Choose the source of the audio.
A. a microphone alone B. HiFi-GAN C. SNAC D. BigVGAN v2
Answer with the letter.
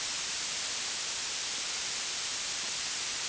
A